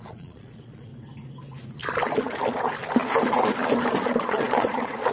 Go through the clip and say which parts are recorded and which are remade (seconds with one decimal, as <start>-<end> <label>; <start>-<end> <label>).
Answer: 0.0-0.9 remade; 0.9-4.0 recorded; 4.0-5.1 remade